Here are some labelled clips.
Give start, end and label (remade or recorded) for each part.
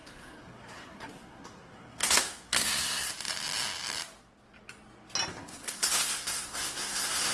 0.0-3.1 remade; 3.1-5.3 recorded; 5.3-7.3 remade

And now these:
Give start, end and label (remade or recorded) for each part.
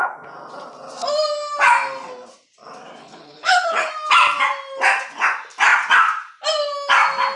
0.0-3.0 recorded; 3.0-3.9 remade; 3.9-7.4 recorded